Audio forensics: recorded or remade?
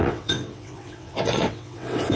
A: remade